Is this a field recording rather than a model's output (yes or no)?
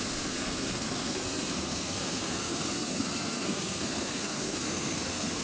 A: no